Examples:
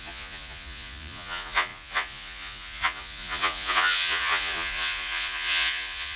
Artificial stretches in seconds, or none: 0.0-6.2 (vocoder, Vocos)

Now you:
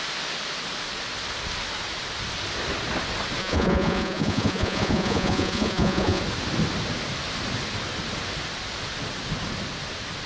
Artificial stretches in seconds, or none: 3.4-6.2 (vocoder, Vocos)

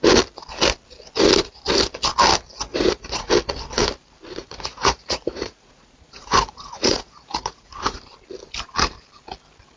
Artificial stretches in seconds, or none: 2.7-3.3 (vocoder, Vocos); 4.4-8.0

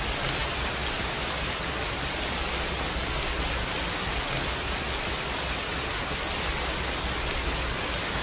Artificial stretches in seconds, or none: none